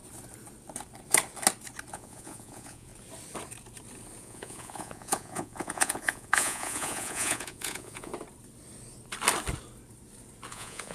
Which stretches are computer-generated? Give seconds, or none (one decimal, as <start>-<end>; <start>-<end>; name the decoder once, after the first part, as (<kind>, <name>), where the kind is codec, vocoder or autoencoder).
1.9-2.9 (vocoder, Vocos); 4.2-8.1; 10.5-10.9